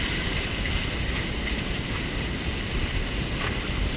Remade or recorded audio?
recorded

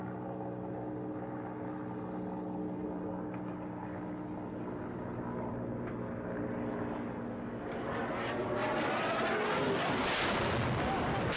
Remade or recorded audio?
recorded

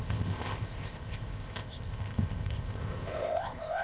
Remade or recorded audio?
remade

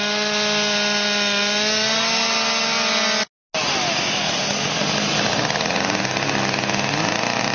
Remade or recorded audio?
recorded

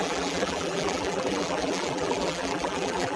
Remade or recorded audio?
remade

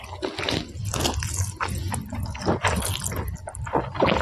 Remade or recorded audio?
recorded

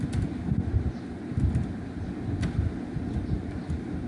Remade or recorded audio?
recorded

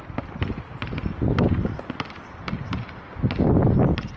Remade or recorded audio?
recorded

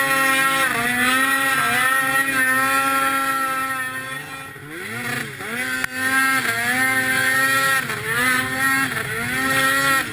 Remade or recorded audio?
recorded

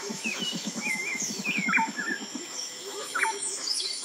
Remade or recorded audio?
remade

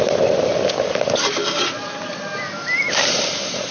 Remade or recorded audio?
recorded